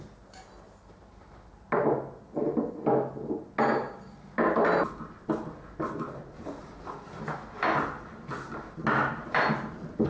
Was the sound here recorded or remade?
recorded